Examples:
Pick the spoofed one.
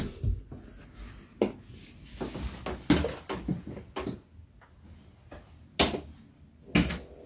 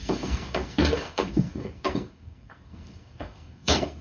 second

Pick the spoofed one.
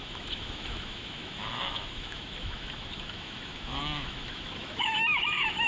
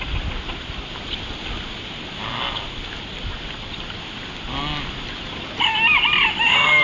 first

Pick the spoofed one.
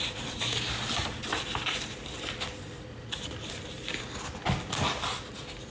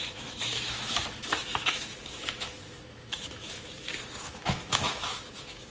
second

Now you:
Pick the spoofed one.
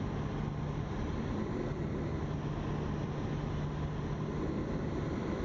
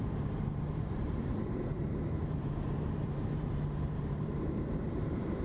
second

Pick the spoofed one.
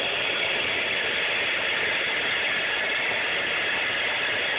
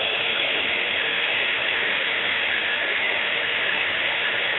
second